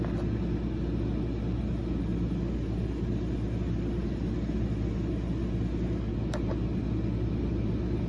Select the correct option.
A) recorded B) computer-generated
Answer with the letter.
A